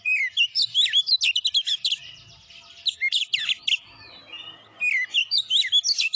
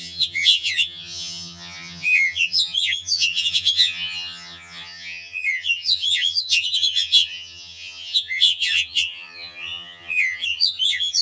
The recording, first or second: first